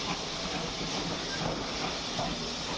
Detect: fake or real real